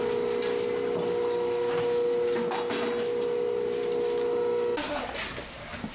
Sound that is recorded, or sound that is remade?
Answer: recorded